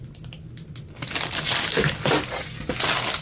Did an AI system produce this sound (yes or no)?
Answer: no